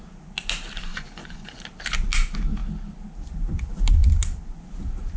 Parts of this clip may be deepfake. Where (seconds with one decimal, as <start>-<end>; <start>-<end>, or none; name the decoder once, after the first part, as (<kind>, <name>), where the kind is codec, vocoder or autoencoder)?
0.9-1.6 (vocoder, Vocos)

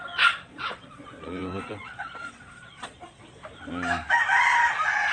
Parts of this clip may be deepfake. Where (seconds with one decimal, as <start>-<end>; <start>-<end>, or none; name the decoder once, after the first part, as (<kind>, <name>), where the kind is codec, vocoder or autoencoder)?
0.0-3.4 (vocoder, Vocos); 4.1-5.1

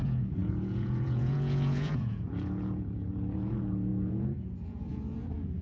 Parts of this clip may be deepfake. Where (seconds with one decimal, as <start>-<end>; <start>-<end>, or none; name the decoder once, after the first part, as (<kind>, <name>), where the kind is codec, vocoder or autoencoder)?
0.0-5.6 (vocoder, Vocos)

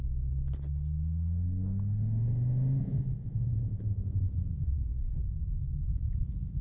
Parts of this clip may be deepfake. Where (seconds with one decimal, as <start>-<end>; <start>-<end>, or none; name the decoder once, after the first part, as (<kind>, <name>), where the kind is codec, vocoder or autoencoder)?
2.8-4.9 (vocoder, Vocos); 5.9-6.6

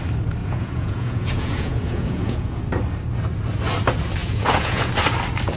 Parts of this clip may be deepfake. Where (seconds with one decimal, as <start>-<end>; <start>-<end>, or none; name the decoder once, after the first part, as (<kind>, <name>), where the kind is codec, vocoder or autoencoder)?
0.4-2.6 (vocoder, Vocos); 4.2-4.9

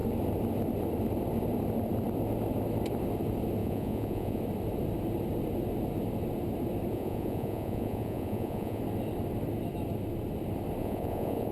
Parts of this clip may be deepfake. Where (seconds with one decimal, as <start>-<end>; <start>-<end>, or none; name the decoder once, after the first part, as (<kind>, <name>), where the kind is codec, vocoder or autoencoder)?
3.6-4.4 (vocoder, Vocos); 6.9-8.8; 10.8-11.5

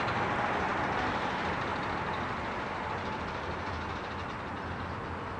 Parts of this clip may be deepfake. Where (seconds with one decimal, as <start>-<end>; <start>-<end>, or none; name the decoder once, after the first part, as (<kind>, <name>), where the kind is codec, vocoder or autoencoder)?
none